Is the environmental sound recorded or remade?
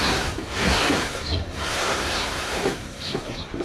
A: remade